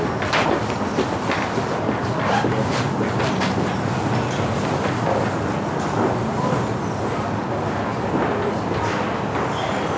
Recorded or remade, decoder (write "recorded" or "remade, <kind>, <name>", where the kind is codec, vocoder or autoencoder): recorded